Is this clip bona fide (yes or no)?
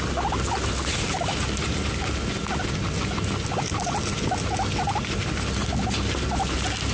yes